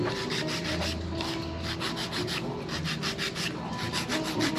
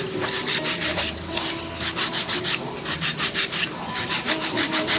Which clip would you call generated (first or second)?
second